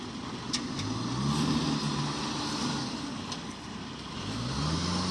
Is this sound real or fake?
real